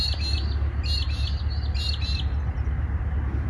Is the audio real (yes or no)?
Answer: yes